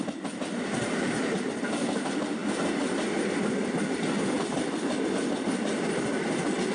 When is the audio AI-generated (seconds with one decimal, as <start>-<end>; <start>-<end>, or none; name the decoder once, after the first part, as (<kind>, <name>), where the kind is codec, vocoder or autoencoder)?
none